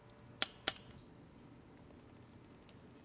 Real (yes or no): yes